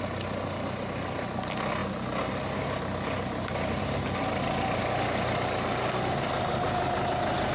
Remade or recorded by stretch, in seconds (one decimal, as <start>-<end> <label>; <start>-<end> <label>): 0.0-7.5 recorded